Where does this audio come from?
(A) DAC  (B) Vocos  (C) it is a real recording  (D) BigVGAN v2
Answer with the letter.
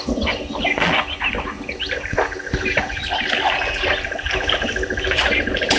C